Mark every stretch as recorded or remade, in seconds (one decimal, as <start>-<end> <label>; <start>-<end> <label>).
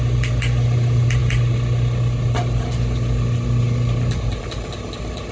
0.0-5.3 recorded